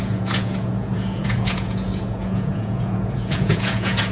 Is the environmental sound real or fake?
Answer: fake